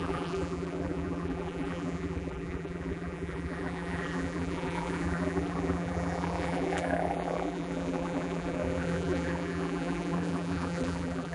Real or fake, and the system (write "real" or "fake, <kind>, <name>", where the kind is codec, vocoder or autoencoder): fake, vocoder, BigVGAN v2